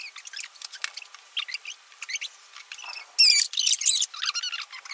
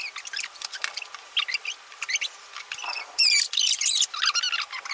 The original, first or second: first